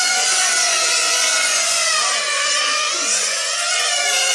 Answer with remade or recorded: remade